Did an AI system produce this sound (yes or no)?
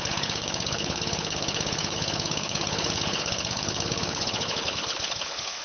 yes